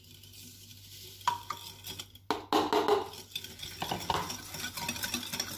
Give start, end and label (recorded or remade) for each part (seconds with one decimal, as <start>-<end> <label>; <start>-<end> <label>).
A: 0.0-5.6 recorded